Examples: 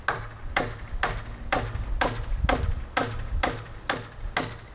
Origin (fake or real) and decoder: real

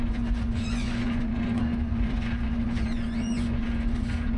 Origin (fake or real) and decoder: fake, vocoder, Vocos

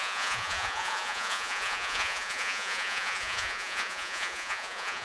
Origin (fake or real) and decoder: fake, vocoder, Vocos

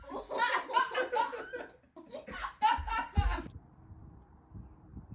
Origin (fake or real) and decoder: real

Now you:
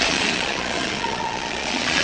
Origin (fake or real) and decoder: fake, vocoder, Vocos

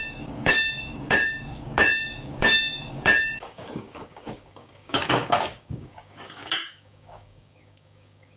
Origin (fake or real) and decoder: fake, codec, DAC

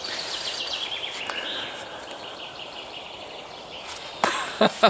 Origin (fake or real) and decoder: real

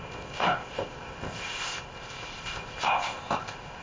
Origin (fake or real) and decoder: fake, codec, ZipCodec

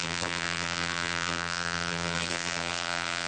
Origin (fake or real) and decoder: fake, vocoder, BigVGAN v2